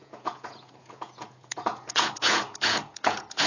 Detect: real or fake fake